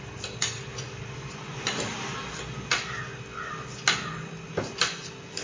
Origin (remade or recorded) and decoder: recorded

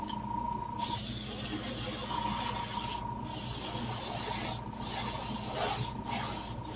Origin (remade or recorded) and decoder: recorded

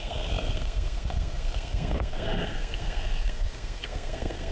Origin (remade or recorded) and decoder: remade, codec, SNAC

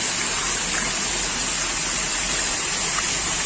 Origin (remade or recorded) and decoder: recorded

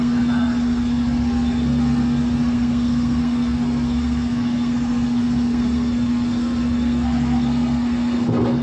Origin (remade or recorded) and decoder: remade, codec, SNAC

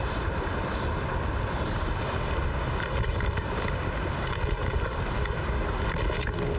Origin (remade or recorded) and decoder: recorded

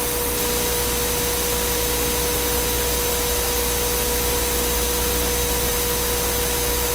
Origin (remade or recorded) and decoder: recorded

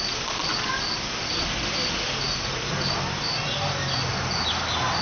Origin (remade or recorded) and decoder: recorded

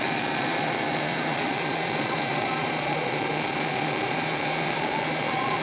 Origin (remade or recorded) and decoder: remade, vocoder, Vocos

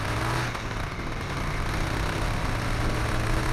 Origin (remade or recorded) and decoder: recorded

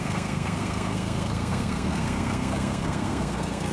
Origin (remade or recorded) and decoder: remade, codec, SNAC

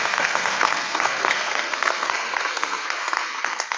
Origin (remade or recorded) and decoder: remade, codec, SNAC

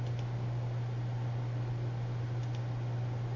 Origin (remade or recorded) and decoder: recorded